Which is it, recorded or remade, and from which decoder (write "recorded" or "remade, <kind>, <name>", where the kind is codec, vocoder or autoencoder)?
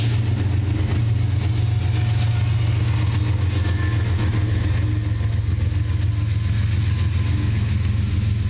recorded